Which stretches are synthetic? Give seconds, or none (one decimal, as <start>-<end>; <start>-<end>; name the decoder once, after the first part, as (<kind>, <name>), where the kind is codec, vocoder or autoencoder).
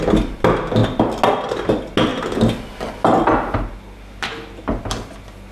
none